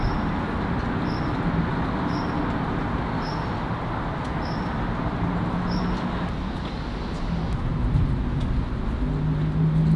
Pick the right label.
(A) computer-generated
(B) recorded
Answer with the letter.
B